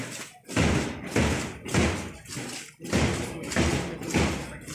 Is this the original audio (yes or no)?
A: yes